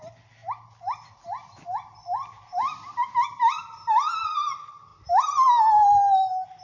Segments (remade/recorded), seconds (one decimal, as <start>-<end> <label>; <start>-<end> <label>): 0.0-6.6 recorded